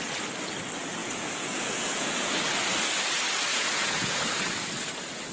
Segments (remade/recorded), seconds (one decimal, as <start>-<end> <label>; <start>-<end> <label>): 0.0-1.0 recorded; 1.0-2.3 remade; 2.3-3.5 recorded; 3.5-4.2 remade; 4.2-5.3 recorded